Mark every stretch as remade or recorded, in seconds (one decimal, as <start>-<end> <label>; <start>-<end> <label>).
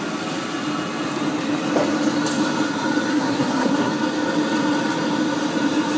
0.0-3.1 recorded; 3.1-3.9 remade; 3.9-6.0 recorded